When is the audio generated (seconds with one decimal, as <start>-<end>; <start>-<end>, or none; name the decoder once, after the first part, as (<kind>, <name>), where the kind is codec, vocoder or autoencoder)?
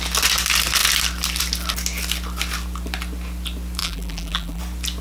3.8-4.6 (vocoder, BigVGAN v2)